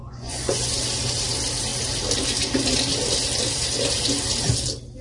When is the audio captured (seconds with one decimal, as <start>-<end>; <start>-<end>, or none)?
0.7-5.0